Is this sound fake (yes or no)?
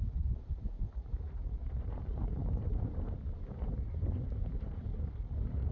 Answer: no